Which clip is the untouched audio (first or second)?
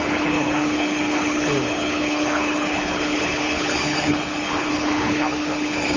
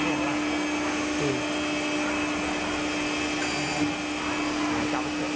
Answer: second